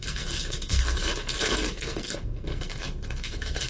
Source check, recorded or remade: remade